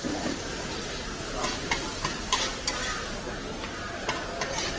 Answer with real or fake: real